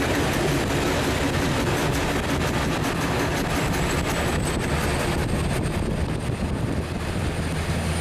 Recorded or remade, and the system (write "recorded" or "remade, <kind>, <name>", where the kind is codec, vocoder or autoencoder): recorded